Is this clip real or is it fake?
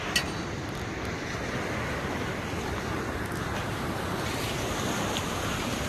real